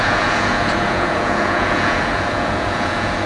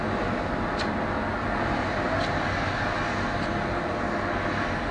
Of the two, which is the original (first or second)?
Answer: second